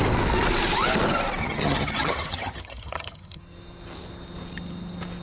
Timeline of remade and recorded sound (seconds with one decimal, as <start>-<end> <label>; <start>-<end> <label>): 0.0-1.4 recorded; 1.4-3.4 remade; 3.4-5.2 recorded